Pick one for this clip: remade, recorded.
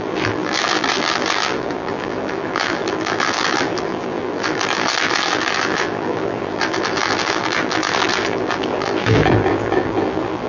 remade